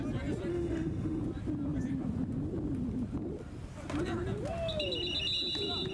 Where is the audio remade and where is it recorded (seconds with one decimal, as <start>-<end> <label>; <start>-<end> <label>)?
0.0-0.5 recorded; 0.5-1.2 remade; 1.2-5.9 recorded